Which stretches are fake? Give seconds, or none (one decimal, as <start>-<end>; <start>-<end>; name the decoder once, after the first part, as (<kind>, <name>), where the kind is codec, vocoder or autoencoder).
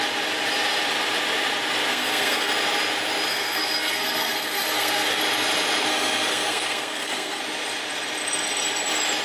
1.9-2.5 (codec, SNAC); 3.3-5.2; 5.9-7.4